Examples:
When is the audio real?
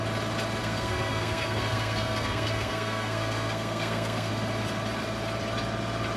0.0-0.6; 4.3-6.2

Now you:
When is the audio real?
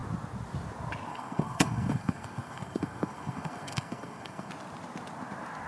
0.0-1.1; 4.5-5.7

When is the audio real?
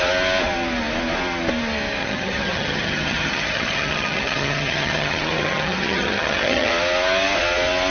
0.0-2.0; 6.7-7.9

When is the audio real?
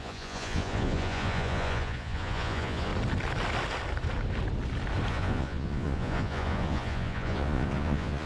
2.9-5.1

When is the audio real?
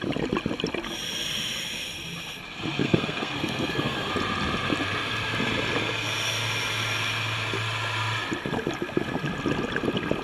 0.0-2.8; 4.1-10.2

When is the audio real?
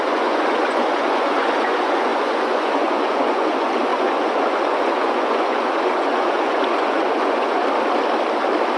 7.6-8.8